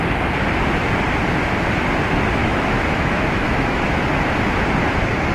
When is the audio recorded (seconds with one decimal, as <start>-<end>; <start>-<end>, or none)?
0.0-2.4; 4.0-5.3